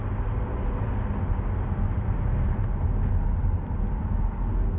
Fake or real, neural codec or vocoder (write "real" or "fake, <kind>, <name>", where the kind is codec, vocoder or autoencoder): real